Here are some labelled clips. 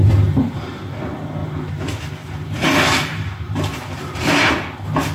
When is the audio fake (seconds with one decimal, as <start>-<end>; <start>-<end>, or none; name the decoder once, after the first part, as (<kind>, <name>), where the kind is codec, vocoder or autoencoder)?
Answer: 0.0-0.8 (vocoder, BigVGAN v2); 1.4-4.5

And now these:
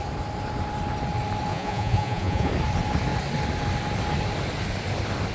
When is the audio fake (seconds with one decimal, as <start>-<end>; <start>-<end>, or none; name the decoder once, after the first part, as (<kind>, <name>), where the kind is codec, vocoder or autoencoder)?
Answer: 1.5-2.5 (vocoder, Vocos)

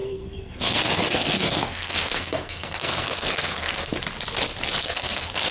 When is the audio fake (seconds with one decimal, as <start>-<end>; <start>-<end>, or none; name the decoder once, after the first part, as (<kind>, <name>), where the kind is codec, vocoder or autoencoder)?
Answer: 0.0-3.9 (codec, SNAC); 4.7-5.5

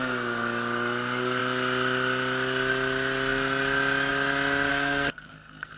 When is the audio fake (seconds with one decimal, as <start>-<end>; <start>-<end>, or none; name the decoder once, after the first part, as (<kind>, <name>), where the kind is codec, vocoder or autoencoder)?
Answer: 4.7-5.8 (codec, SNAC)